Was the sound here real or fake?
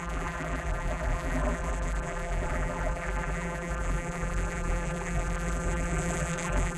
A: fake